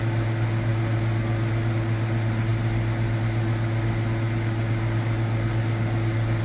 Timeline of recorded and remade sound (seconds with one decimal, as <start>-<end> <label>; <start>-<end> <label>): 0.0-6.4 recorded